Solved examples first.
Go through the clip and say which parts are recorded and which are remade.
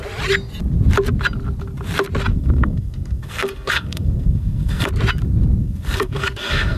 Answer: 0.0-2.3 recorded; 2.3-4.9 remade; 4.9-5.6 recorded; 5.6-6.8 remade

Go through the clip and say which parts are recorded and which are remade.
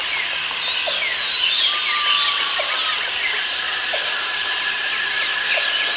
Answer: 0.0-6.0 recorded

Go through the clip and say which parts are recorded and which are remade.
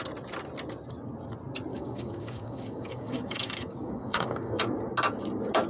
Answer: 0.0-1.7 recorded; 1.7-4.6 remade; 4.6-5.7 recorded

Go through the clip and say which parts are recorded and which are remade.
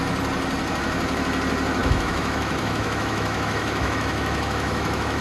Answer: 0.0-1.8 recorded; 1.8-5.2 remade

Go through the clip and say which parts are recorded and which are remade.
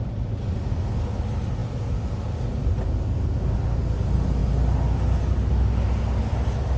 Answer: 0.0-6.8 recorded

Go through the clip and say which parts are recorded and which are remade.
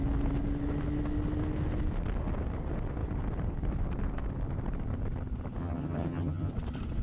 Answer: 0.0-5.6 recorded; 5.6-6.5 remade; 6.5-7.0 recorded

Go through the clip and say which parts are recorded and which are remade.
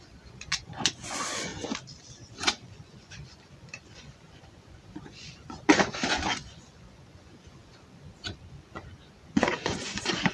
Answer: 0.0-1.5 remade; 1.5-2.3 recorded; 2.3-10.3 remade